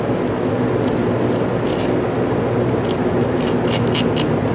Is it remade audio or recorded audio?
recorded